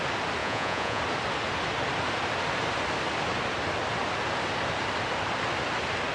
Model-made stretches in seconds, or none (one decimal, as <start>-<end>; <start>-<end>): 0.4-1.0